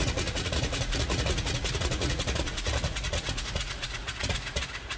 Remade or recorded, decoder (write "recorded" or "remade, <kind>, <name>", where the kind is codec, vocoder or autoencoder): remade, vocoder, Vocos